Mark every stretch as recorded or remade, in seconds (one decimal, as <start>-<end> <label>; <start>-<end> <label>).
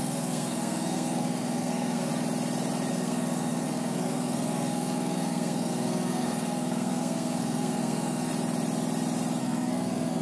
0.0-2.1 remade; 2.1-2.9 recorded; 2.9-8.3 remade; 8.3-9.4 recorded; 9.4-10.2 remade